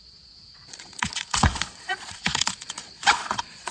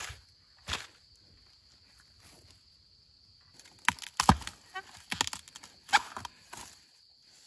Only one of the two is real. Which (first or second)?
second